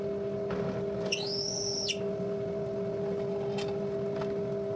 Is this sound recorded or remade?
recorded